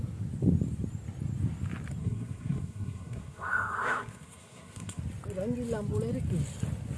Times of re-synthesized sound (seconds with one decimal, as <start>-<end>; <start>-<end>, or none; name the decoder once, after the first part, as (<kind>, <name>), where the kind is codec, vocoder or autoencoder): 2.0-5.0 (codec, SNAC)